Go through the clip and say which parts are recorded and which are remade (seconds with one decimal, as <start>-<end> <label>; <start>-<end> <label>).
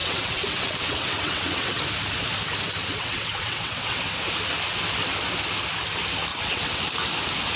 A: 0.0-1.8 remade; 1.8-2.9 recorded; 2.9-4.1 remade; 4.1-6.3 recorded; 6.3-6.8 remade; 6.8-7.6 recorded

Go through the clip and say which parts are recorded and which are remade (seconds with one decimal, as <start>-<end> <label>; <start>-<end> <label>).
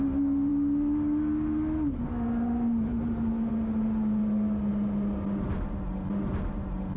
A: 0.0-7.0 recorded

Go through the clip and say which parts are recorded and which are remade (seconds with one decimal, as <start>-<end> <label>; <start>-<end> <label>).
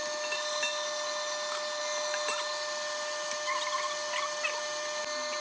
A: 0.0-5.4 recorded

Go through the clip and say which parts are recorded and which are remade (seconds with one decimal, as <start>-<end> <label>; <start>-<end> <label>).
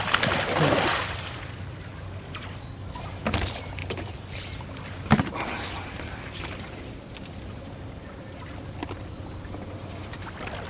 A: 0.0-10.7 recorded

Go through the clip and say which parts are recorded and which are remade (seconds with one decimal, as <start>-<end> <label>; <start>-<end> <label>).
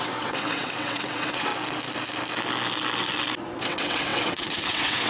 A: 0.0-1.5 remade; 1.5-3.6 recorded; 3.6-5.1 remade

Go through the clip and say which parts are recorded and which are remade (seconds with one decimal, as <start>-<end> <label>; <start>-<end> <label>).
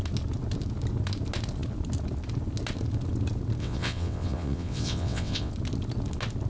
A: 0.0-3.6 recorded; 3.6-5.5 remade; 5.5-6.5 recorded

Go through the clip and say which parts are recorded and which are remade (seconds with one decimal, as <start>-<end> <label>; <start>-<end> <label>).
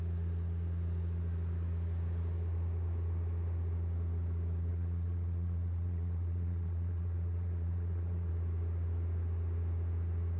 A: 0.0-4.7 recorded; 4.7-8.3 remade; 8.3-10.4 recorded